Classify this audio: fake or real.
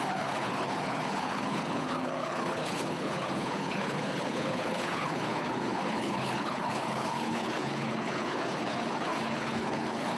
fake